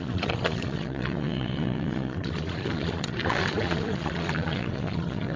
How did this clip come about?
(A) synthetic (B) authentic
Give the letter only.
A